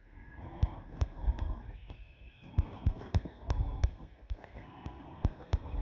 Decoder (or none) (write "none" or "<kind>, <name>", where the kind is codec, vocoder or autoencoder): codec, SNAC